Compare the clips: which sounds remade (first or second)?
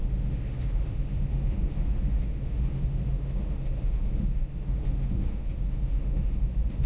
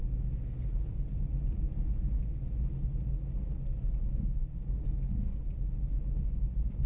first